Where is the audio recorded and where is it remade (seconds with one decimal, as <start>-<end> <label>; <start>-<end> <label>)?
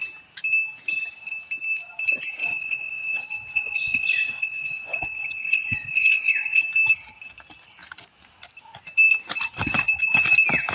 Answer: 0.0-2.4 recorded; 2.4-6.6 remade; 6.6-10.7 recorded